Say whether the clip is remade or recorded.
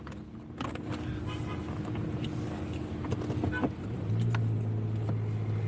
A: recorded